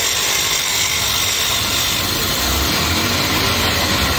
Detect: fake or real fake